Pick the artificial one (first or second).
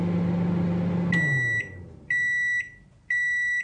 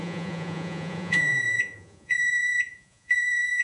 second